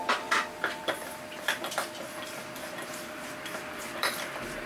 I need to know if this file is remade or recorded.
remade